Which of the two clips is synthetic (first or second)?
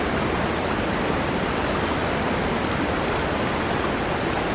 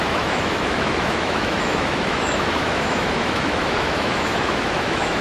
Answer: second